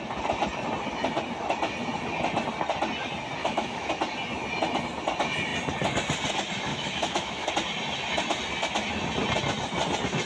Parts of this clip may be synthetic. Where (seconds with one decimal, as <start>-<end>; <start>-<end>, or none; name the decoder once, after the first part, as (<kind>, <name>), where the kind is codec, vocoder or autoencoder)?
3.4-3.9 (autoencoder, DAC-VAE); 6.7-7.5